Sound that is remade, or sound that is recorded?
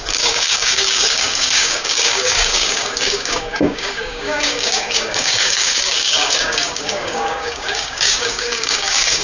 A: remade